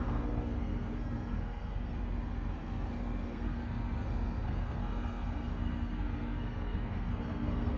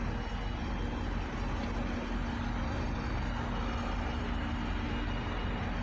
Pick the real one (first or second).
second